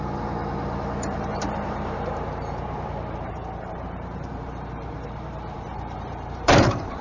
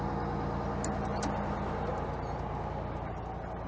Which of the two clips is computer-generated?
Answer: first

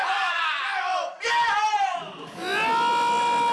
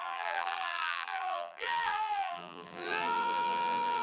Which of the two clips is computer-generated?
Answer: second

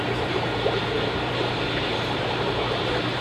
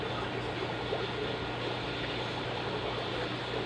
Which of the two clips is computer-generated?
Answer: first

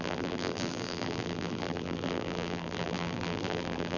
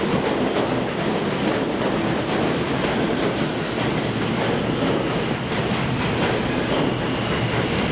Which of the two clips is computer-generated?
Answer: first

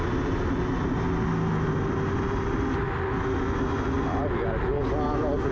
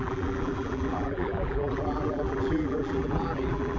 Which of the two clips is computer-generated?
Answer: second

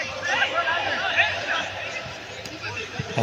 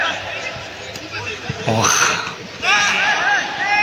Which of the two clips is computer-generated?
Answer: first